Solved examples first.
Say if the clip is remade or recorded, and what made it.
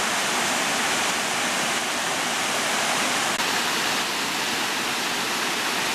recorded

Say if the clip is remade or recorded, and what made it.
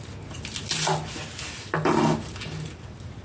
recorded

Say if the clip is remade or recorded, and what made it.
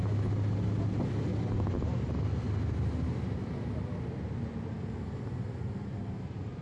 recorded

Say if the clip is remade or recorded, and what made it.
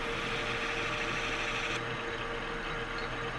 recorded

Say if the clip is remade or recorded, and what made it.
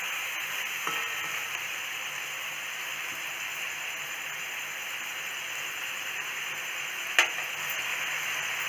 recorded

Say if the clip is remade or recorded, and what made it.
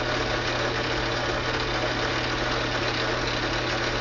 recorded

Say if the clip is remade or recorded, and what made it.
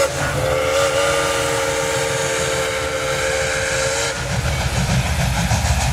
recorded